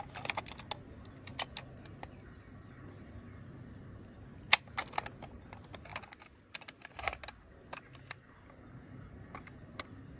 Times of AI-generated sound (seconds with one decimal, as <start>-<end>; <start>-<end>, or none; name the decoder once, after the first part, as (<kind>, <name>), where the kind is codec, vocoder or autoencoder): none